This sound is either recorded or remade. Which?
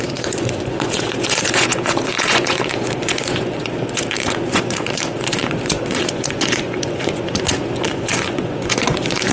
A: remade